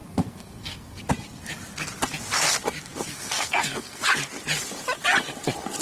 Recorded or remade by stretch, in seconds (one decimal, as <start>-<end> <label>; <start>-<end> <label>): 0.0-1.0 remade; 1.0-3.1 recorded; 3.1-4.1 remade; 4.1-5.8 recorded